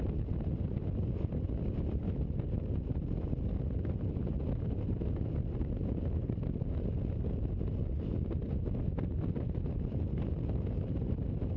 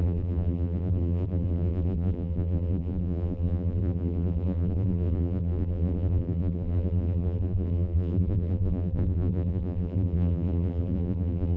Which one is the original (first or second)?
first